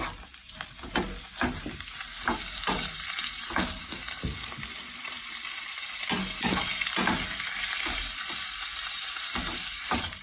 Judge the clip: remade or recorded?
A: recorded